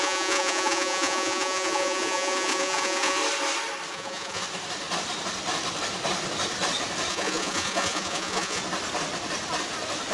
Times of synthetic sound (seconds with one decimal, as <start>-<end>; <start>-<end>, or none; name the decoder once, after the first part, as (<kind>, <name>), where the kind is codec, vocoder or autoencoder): 0.0-3.2 (vocoder, Vocos); 3.9-4.4; 7.1-8.6